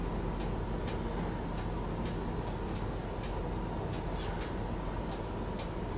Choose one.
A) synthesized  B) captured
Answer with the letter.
B